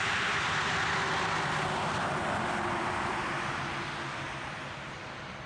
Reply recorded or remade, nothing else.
remade